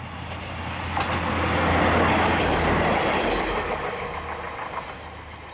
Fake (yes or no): no